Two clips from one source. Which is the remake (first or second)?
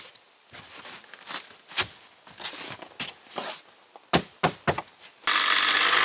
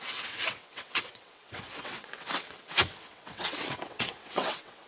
second